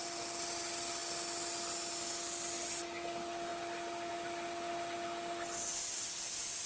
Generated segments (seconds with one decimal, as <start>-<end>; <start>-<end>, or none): none